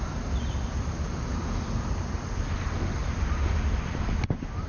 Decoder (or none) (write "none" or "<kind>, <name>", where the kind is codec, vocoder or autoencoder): none